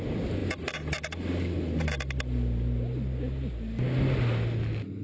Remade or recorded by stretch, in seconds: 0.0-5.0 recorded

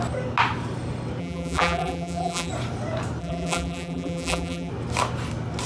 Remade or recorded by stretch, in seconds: 0.0-1.2 recorded; 1.2-2.5 remade; 2.5-3.2 recorded; 3.2-4.7 remade; 4.7-5.7 recorded

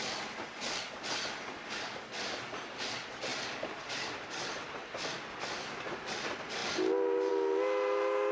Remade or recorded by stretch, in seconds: 0.0-8.3 recorded